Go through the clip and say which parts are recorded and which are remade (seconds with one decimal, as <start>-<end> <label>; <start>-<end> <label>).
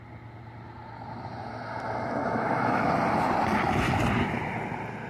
0.0-2.2 recorded; 2.2-2.9 remade; 2.9-5.1 recorded